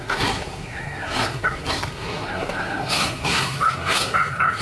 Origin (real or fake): fake